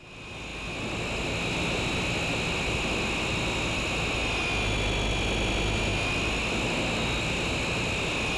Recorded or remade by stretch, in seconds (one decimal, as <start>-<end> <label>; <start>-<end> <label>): 0.0-8.4 recorded